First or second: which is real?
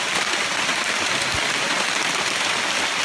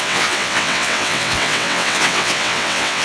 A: first